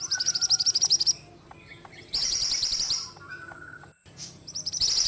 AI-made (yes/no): no